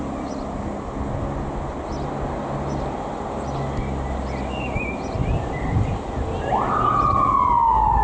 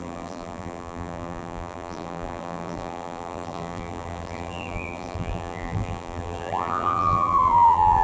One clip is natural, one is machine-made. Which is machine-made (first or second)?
second